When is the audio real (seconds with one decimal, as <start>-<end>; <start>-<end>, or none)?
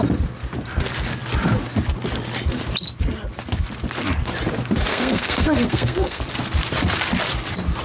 0.0-4.9; 6.2-7.8